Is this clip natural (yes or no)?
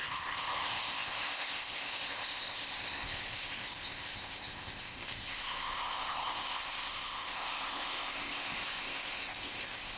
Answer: no